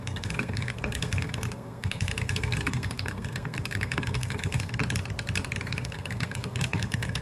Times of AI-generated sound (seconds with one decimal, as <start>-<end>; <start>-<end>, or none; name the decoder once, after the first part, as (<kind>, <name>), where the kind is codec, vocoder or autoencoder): 0.0-4.8 (codec, SNAC); 5.6-7.2